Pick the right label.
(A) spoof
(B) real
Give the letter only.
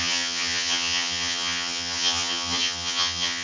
A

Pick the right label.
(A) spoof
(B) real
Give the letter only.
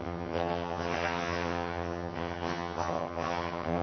A